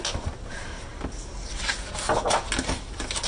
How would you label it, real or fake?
real